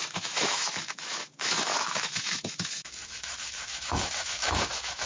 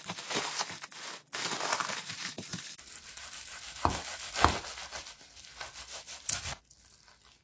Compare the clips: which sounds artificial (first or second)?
first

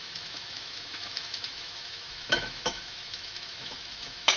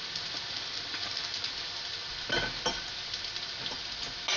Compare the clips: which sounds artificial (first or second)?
first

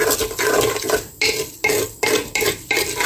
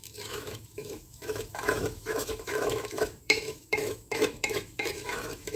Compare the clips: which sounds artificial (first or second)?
second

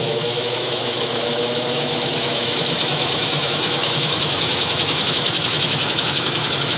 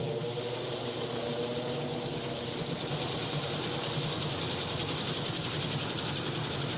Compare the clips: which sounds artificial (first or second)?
first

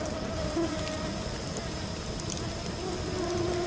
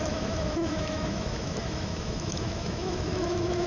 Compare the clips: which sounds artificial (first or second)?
second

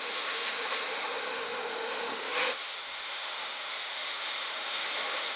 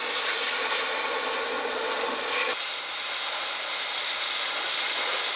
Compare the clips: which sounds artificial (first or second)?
first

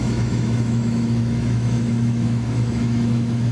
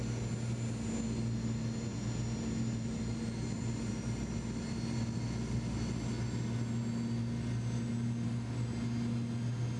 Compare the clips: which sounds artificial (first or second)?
first